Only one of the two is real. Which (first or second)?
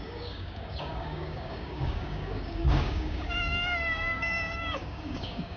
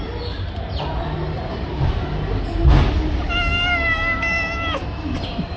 second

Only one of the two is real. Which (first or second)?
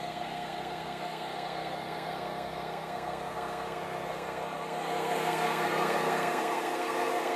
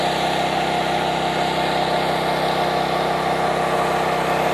second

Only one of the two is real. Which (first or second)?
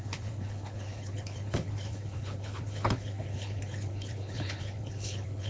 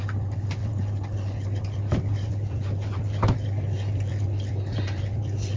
second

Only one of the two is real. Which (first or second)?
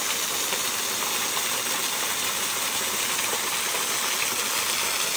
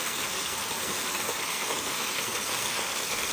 first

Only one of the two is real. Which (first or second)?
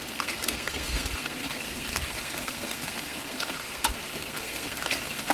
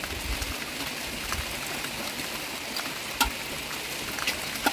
second